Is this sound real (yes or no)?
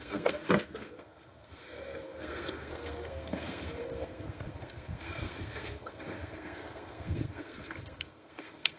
no